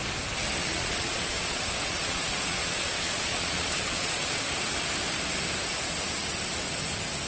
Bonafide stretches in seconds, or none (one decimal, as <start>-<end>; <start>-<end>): 0.0-0.6; 4.4-7.3